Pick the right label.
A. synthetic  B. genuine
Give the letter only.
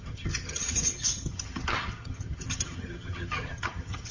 A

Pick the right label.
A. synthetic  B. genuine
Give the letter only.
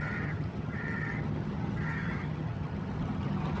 A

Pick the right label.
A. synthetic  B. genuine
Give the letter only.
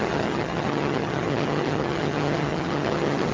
A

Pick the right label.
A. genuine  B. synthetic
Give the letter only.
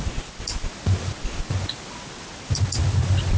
A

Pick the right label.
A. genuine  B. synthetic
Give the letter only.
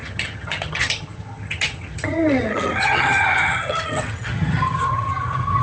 B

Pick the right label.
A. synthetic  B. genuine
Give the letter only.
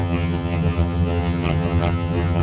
A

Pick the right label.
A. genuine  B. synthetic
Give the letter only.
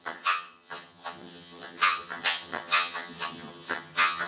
B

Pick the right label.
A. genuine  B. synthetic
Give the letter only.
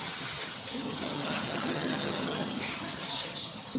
B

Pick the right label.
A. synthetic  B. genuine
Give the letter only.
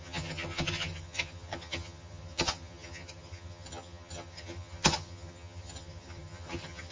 A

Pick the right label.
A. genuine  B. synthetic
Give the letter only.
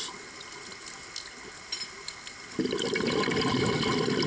A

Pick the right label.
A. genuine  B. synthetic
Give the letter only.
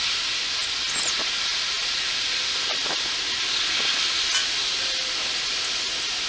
A